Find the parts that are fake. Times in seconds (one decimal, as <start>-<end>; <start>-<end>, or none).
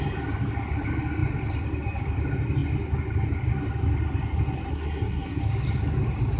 4.7-5.4